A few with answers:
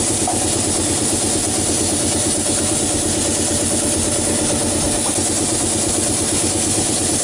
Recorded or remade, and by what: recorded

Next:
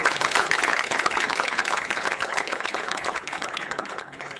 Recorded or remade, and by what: remade, codec, HILCodec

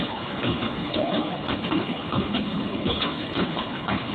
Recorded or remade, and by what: remade, codec, HILCodec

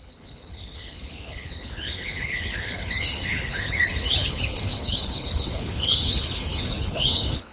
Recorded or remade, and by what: remade, codec, HILCodec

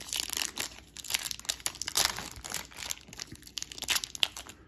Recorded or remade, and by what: recorded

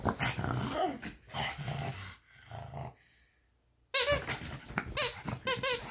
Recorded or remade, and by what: recorded